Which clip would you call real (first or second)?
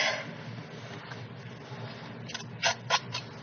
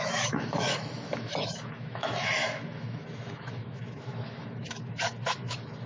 first